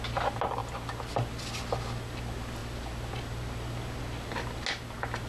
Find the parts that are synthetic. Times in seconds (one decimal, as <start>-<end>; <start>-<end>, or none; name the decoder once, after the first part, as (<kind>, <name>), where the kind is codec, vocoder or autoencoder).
none